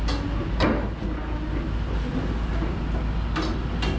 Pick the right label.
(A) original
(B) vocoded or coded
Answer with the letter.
A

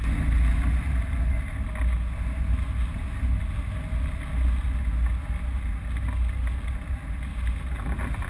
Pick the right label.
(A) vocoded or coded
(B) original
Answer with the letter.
B